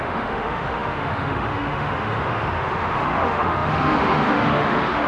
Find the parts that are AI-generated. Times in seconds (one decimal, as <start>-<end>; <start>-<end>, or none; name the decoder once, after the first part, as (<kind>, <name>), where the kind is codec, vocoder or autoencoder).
0.0-5.1 (autoencoder, DAC-VAE)